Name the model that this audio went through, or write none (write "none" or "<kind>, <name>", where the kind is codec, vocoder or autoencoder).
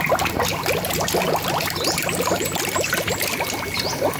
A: none